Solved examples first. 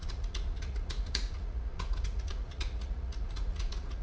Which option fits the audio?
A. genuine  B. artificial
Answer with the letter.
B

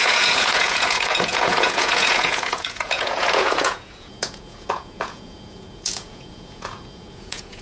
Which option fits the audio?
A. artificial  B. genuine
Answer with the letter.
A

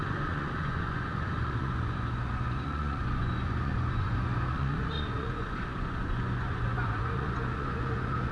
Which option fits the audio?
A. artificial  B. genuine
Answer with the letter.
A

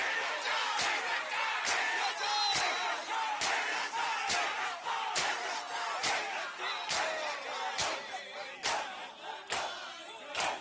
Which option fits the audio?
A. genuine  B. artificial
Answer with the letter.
A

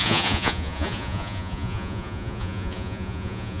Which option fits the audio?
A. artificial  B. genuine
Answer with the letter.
A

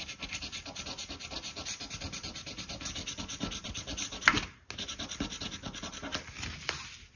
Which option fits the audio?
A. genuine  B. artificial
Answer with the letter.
A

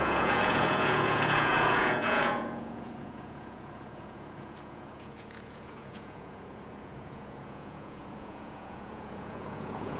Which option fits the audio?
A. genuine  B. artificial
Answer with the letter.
B